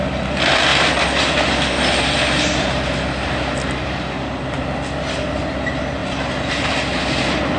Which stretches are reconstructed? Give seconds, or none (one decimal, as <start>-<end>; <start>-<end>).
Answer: none